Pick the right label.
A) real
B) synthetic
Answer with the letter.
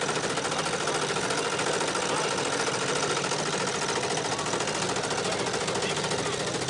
A